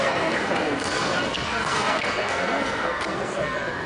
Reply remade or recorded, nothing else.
remade